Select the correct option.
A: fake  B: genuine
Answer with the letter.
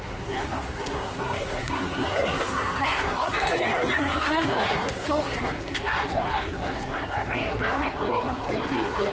A